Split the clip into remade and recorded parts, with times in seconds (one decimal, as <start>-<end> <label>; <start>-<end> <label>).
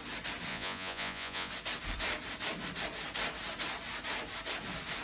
0.0-0.5 recorded; 0.5-1.5 remade; 1.5-5.0 recorded